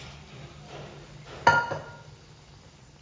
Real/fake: real